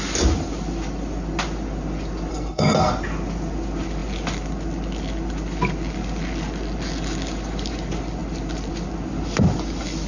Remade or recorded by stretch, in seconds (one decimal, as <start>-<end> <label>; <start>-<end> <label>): 0.0-2.3 recorded; 2.3-2.9 remade; 2.9-10.1 recorded